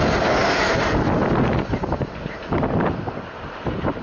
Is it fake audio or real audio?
real